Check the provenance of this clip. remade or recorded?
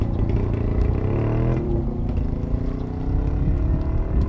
recorded